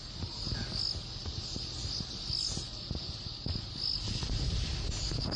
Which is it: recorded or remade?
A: recorded